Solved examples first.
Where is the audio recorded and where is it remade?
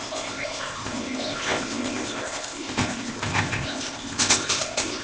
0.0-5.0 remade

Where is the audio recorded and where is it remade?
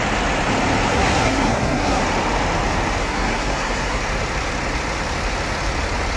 0.0-0.9 recorded; 0.9-2.0 remade; 2.0-3.0 recorded; 3.0-4.0 remade; 4.0-6.2 recorded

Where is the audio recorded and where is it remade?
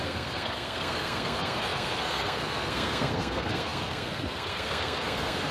0.0-5.5 remade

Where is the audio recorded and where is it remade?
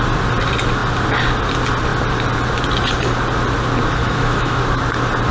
0.0-4.0 recorded; 4.0-4.6 remade; 4.6-5.3 recorded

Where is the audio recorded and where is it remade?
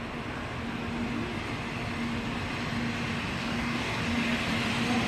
0.0-3.4 recorded; 3.4-4.0 remade; 4.0-5.1 recorded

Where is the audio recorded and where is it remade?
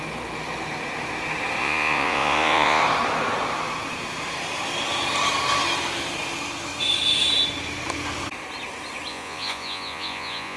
0.0-1.6 recorded; 1.6-2.8 remade; 2.8-9.1 recorded; 9.1-10.6 remade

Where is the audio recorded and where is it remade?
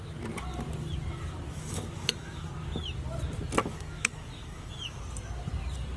0.0-1.5 recorded; 1.5-2.5 remade; 2.5-3.6 recorded; 3.6-5.0 remade; 5.0-6.0 recorded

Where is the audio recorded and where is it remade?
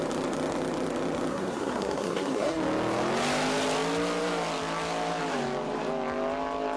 0.0-1.3 recorded; 1.3-2.6 remade; 2.6-6.8 recorded